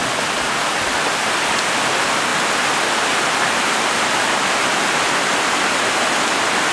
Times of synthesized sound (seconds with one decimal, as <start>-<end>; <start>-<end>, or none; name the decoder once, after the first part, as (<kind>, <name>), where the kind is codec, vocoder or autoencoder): none